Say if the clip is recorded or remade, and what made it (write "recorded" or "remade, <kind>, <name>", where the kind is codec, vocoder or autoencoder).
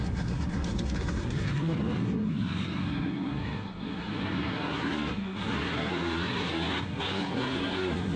remade, codec, SNAC